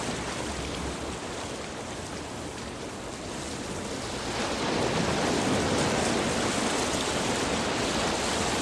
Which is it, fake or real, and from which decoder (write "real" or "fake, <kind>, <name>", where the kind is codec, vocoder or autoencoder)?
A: real